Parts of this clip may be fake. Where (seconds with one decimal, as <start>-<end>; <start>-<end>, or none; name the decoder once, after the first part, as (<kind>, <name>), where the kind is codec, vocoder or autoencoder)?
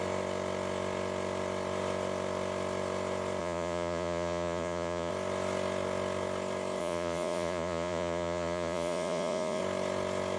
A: 3.4-5.1 (vocoder, Vocos); 6.8-9.6